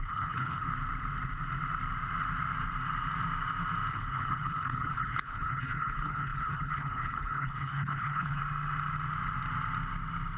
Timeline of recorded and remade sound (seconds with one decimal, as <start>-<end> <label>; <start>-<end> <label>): 0.0-0.7 remade; 0.7-3.9 recorded; 3.9-8.4 remade; 8.4-10.4 recorded